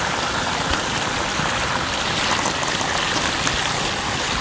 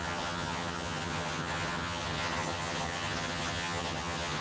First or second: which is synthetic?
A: second